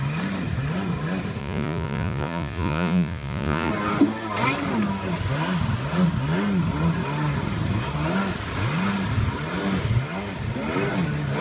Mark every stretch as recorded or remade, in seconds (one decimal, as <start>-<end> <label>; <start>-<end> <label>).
0.0-1.4 recorded; 1.4-3.7 remade; 3.7-11.4 recorded

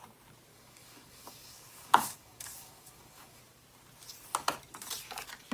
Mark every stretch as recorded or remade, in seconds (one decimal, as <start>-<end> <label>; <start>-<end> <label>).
0.0-0.5 recorded; 0.5-3.4 remade; 3.4-5.5 recorded

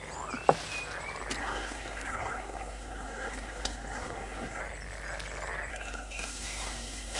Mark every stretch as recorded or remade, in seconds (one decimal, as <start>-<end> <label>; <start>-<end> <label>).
0.0-1.4 recorded; 1.4-4.6 remade; 4.6-5.7 recorded; 5.7-7.2 remade

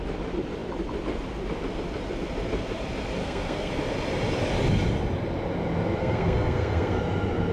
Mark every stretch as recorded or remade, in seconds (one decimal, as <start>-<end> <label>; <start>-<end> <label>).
0.0-3.2 recorded; 3.2-3.7 remade; 3.7-6.0 recorded; 6.0-7.0 remade; 7.0-7.5 recorded

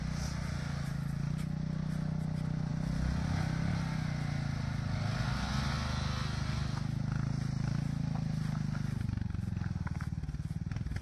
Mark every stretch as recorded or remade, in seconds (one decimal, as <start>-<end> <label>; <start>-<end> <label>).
0.0-11.0 recorded

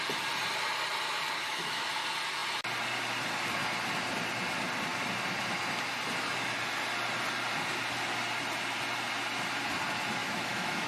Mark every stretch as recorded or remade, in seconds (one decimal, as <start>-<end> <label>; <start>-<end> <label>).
0.0-1.4 recorded; 1.4-1.9 remade; 1.9-10.2 recorded; 10.2-10.9 remade